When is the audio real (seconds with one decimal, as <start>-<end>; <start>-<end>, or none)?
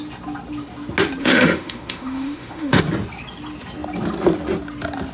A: 0.0-1.2; 2.8-5.1